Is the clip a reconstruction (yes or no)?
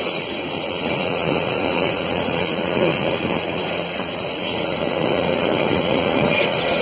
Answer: yes